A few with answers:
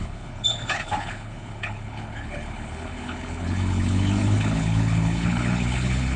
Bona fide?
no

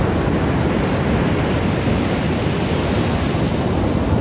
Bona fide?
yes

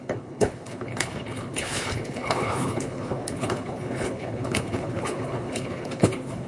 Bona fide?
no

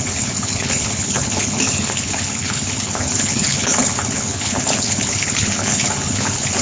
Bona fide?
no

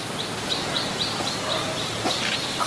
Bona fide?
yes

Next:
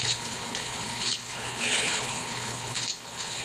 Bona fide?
no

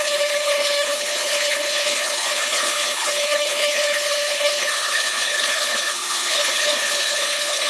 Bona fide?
no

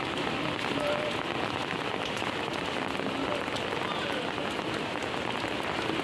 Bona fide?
yes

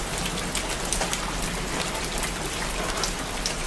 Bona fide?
yes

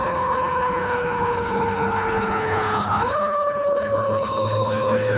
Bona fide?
no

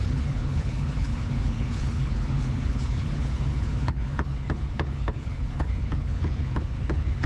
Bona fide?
no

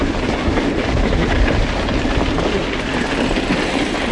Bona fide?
yes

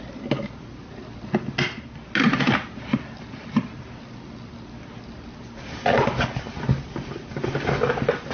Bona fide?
yes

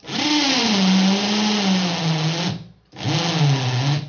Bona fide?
yes